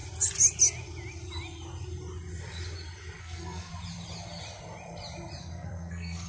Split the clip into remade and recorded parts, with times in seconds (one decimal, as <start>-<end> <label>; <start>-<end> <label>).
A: 0.0-3.2 recorded; 3.2-3.7 remade; 3.7-5.4 recorded; 5.4-6.3 remade